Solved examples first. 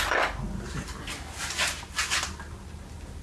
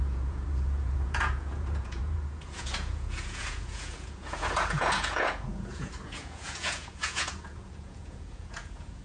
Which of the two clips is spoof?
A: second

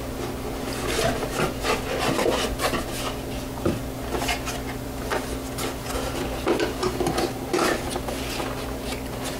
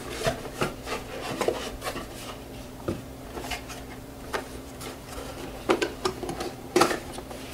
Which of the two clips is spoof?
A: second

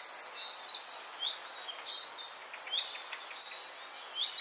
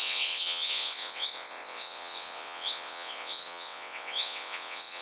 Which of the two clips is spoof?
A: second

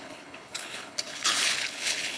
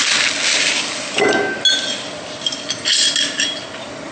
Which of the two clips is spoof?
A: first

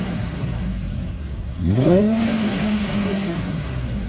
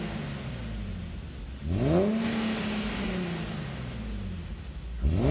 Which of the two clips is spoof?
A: first